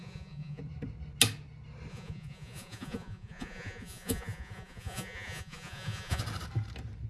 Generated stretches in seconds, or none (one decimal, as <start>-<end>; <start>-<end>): 0.0-0.6; 1.9-6.2